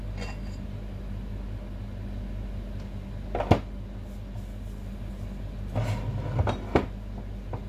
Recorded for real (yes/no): yes